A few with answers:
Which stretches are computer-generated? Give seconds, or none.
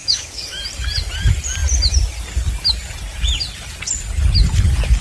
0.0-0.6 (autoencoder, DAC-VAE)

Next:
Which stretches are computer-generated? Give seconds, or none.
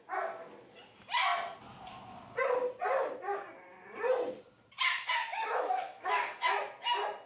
5.3-6.2 (autoencoder, DAC-VAE)